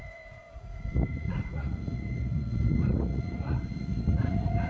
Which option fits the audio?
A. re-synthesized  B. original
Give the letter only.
A